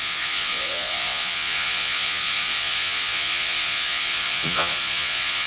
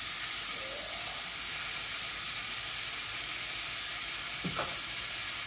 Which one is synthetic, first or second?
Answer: first